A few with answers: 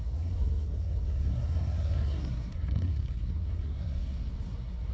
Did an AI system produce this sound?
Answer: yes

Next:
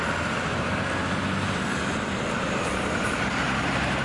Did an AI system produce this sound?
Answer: yes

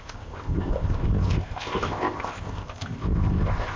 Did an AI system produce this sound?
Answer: yes